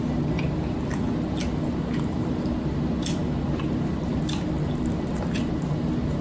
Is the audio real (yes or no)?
yes